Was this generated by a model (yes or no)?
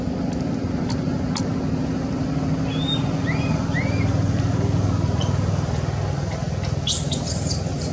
no